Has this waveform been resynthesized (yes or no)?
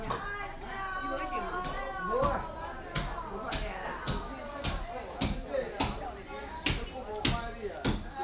no